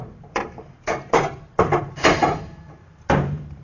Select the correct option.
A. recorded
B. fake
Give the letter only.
B